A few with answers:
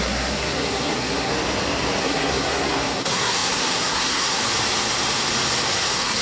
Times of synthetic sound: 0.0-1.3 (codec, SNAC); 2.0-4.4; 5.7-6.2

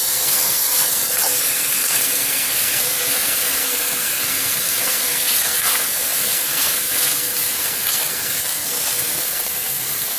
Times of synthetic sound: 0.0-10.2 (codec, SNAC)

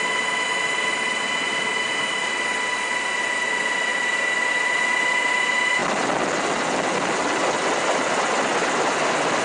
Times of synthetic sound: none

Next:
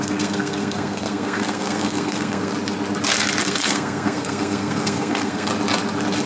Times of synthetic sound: 0.0-2.5 (codec, SNAC); 3.4-5.5

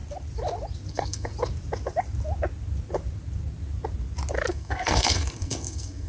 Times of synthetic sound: 0.9-1.3 (codec, SNAC); 4.5-6.1

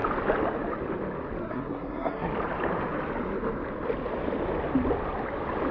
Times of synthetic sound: 1.4-2.3 (codec, SNAC)